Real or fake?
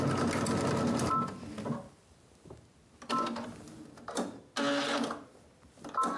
real